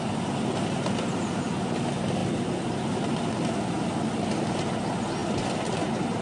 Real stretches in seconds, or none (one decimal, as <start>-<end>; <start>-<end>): 0.0-6.2